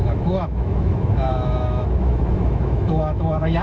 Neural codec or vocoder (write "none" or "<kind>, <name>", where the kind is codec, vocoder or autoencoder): autoencoder, DAC-VAE